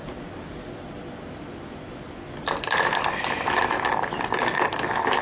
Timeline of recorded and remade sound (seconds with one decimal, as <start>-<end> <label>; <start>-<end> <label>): 0.0-3.1 remade; 3.1-5.2 recorded